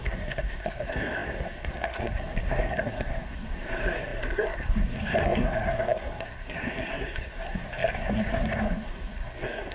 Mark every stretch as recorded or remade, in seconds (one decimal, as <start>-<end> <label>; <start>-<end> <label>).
0.0-9.7 remade